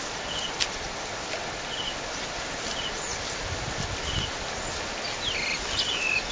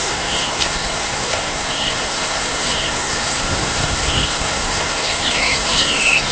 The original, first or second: first